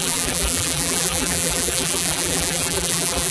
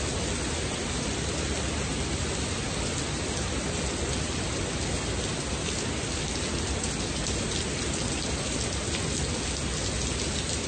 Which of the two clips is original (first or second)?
second